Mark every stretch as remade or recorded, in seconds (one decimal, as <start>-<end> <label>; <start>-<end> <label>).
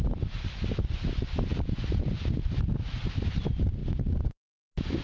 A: 0.0-5.0 recorded